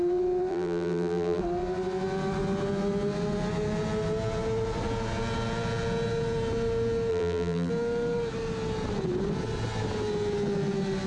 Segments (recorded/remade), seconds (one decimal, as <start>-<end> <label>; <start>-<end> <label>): 0.0-0.5 recorded; 0.5-1.4 remade; 1.4-7.1 recorded; 7.1-7.7 remade; 7.7-11.1 recorded